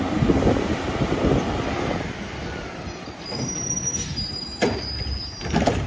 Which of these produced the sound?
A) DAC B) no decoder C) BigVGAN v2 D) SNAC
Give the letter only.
B